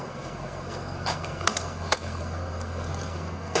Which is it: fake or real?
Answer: fake